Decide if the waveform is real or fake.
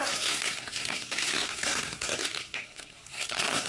fake